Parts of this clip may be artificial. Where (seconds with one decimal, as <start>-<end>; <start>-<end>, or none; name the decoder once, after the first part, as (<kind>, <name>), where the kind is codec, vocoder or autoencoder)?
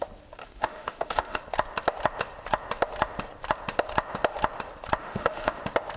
0.4-1.4 (autoencoder, DAC-VAE); 5.0-5.6